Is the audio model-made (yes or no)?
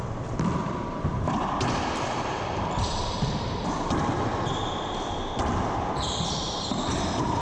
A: yes